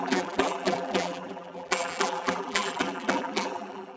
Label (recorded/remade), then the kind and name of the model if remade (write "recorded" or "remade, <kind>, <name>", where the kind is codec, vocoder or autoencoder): remade, vocoder, BigVGAN v2